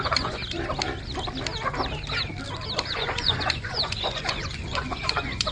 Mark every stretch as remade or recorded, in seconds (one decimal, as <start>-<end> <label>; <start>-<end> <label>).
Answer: 0.0-0.4 remade; 0.4-2.9 recorded; 2.9-5.5 remade

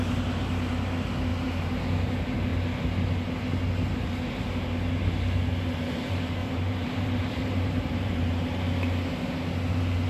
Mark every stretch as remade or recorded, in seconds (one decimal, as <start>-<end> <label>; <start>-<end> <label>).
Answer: 0.0-1.3 recorded; 1.3-1.8 remade; 1.8-6.4 recorded; 6.4-8.5 remade; 8.5-10.1 recorded